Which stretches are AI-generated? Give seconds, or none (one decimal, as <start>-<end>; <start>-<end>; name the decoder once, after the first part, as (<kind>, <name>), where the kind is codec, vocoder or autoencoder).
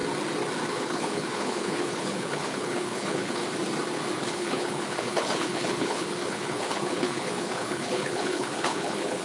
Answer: 0.7-3.4 (codec, HILCodec); 4.2-9.2